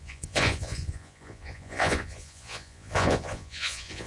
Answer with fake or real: fake